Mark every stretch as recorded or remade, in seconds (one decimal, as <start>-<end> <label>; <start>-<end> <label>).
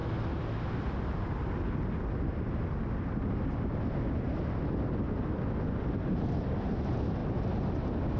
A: 0.0-8.2 recorded